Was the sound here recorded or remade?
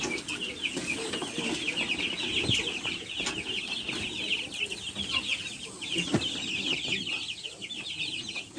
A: recorded